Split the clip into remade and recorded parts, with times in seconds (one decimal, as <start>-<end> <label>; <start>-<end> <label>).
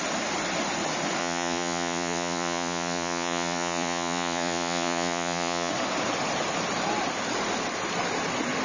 0.0-1.2 recorded; 1.2-5.7 remade; 5.7-8.6 recorded